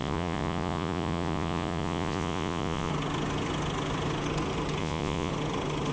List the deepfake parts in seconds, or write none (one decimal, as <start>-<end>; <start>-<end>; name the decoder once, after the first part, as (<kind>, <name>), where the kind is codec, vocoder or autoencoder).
0.0-2.9 (vocoder, Vocos); 4.8-5.3